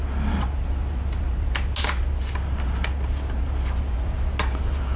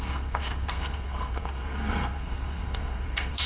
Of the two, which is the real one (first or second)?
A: first